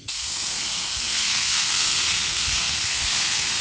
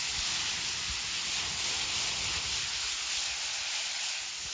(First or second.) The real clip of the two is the second